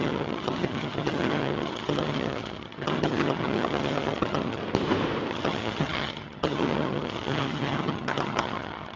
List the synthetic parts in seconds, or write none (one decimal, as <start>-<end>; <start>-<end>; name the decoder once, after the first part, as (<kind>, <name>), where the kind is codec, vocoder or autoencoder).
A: 0.0-4.6 (vocoder, HiFi-GAN); 5.3-9.0